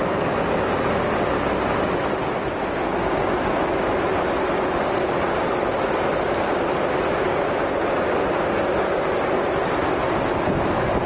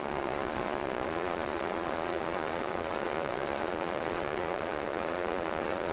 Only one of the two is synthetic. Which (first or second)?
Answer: second